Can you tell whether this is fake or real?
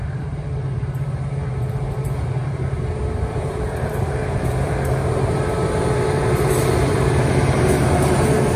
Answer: fake